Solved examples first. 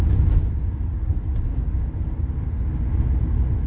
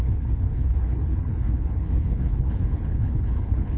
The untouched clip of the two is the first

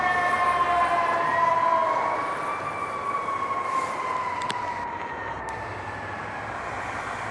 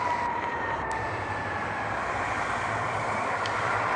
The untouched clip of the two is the first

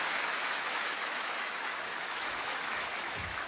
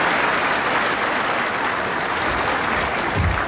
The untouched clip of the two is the second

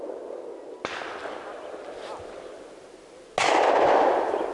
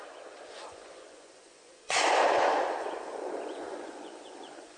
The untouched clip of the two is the first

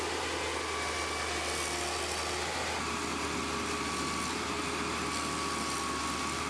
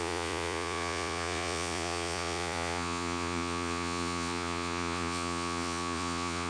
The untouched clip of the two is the first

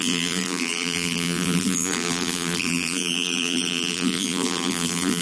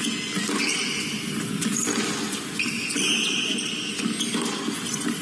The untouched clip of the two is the second